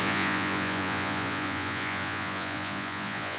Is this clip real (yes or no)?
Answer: no